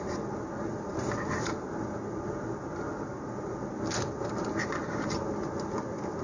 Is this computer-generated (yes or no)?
no